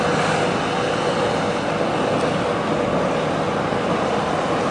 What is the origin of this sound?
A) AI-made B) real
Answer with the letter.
B